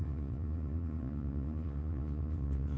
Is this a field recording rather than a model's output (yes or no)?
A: no